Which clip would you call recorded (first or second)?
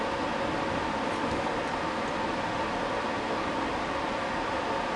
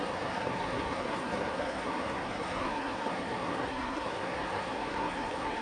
first